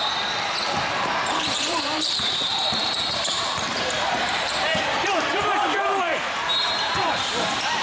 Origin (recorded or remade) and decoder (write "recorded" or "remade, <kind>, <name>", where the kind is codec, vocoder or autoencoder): remade, vocoder, BigVGAN v2